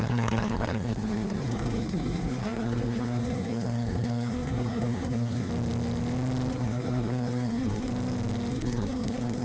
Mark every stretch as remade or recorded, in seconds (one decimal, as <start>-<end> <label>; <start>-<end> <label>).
0.0-5.5 remade; 5.5-6.5 recorded; 6.5-7.9 remade; 7.9-8.5 recorded; 8.5-9.4 remade